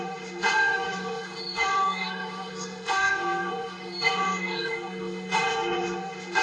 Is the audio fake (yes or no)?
yes